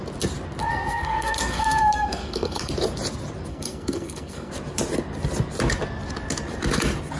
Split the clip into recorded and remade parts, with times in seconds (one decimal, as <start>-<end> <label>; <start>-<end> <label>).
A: 0.0-0.6 recorded; 0.6-2.7 remade; 2.7-3.5 recorded; 3.5-4.5 remade; 4.5-7.2 recorded